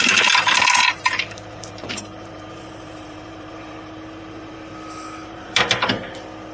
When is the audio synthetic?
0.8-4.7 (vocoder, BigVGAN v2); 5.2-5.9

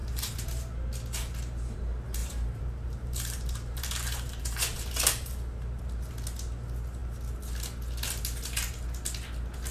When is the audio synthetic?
0.0-0.6 (vocoder, BigVGAN v2); 2.2-5.8

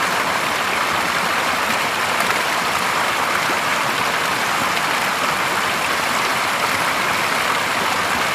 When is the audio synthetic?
6.3-7.1 (vocoder, BigVGAN v2)

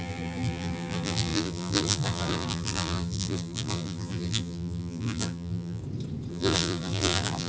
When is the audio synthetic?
0.0-5.8 (vocoder, BigVGAN v2); 6.3-7.5

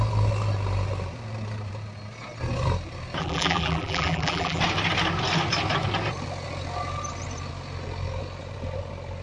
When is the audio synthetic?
3.2-4.6 (vocoder, BigVGAN v2)

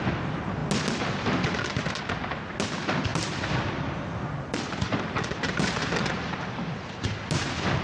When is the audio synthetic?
3.1-6.1 (vocoder, BigVGAN v2)

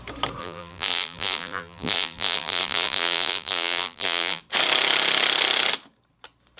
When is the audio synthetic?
0.4-4.4 (vocoder, BigVGAN v2)

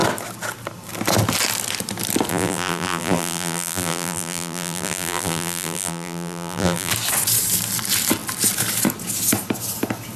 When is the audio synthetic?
2.3-6.9 (vocoder, BigVGAN v2)